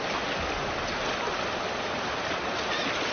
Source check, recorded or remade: recorded